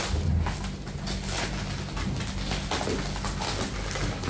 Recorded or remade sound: recorded